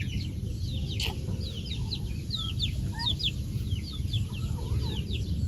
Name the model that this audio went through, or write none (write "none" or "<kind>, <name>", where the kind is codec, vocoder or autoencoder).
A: none